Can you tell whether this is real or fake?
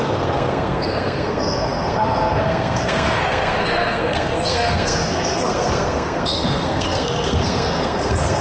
fake